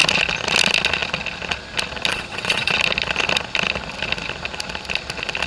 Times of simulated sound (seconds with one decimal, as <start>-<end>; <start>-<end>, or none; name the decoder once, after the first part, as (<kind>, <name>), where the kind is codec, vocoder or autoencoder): 2.1-2.7 (vocoder, WaveNeXt)